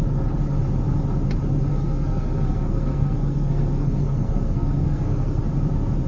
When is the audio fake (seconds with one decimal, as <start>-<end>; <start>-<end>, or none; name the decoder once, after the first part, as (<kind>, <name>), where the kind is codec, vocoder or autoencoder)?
1.7-5.4 (codec, SNAC)